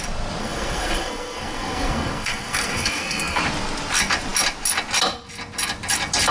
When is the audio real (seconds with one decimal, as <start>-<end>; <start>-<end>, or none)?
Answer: 0.0-0.4; 3.4-6.3